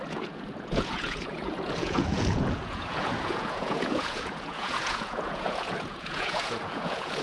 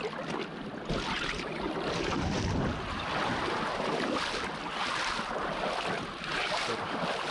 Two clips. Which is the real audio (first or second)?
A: second